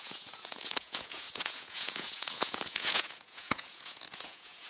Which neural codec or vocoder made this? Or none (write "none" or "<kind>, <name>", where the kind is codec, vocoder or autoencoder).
vocoder, Vocos